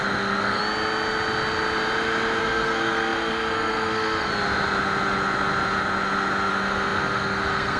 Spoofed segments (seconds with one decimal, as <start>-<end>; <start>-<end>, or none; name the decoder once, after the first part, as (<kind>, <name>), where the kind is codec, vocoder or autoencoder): 0.0-0.6 (codec, SNAC); 2.4-4.3; 6.5-7.8